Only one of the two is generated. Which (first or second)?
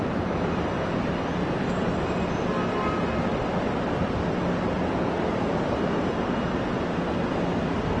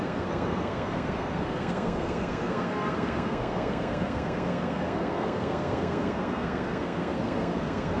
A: second